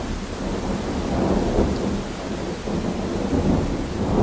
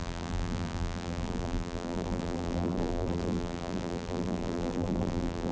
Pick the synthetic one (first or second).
second